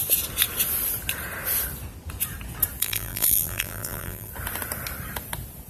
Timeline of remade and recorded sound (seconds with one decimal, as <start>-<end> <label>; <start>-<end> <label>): 0.0-2.8 recorded; 2.8-4.3 remade; 4.3-5.7 recorded